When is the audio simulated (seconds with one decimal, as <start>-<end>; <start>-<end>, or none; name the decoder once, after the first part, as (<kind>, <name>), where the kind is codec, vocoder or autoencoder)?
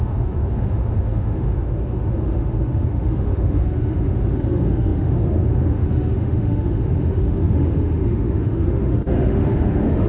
0.0-10.1 (autoencoder, DAC-VAE)